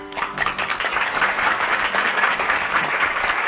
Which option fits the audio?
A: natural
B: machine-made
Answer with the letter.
B